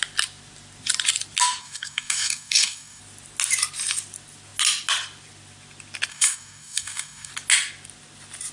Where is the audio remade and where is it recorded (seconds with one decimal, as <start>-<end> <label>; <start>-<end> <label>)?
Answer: 0.0-1.6 recorded; 1.6-3.0 remade; 3.0-6.1 recorded; 6.1-7.3 remade; 7.3-8.5 recorded